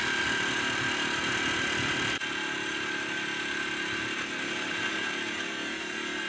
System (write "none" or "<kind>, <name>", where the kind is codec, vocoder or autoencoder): none